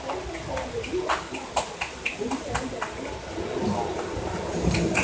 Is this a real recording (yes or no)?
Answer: yes